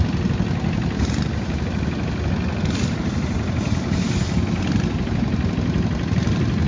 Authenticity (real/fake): real